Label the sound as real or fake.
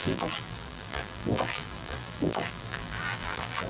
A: fake